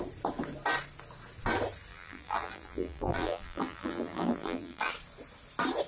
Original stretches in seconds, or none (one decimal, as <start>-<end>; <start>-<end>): 0.0-1.9; 4.9-5.9

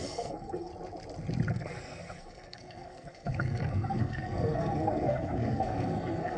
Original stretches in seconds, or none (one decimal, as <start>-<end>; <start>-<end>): 0.7-1.5

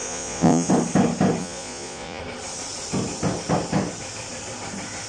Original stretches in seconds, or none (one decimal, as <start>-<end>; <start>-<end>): 0.7-1.4; 2.2-5.1

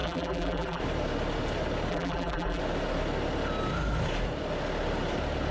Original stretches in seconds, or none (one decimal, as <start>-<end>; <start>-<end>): 0.8-1.9; 2.6-5.5

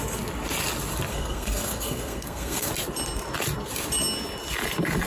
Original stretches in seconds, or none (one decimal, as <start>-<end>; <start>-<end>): 0.0-1.1; 2.7-5.1

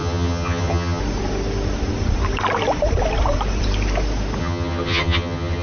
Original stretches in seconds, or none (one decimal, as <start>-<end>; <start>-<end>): 1.0-4.4